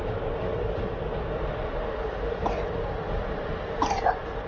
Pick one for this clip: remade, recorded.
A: remade